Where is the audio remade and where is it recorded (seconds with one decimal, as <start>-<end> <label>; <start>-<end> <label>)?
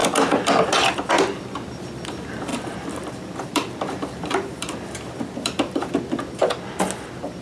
0.0-2.5 recorded; 2.5-5.9 remade; 5.9-7.4 recorded